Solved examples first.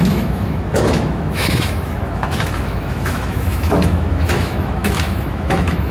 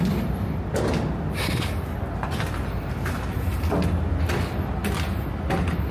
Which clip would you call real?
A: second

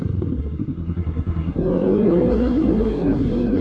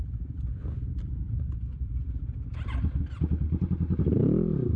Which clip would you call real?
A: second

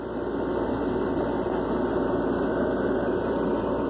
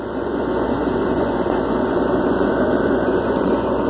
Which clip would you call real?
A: first